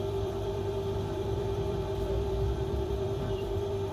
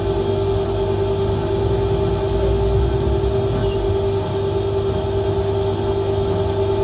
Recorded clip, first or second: second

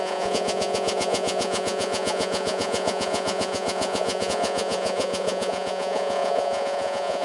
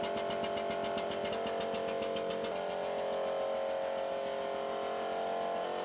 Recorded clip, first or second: second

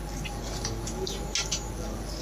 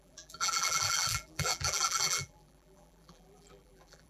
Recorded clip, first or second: first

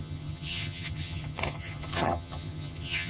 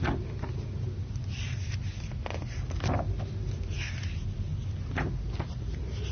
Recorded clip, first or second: second